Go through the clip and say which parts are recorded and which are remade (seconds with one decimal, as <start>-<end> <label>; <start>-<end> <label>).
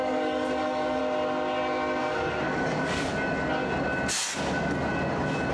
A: 0.0-1.0 remade; 1.0-2.0 recorded; 2.0-3.1 remade; 3.1-5.5 recorded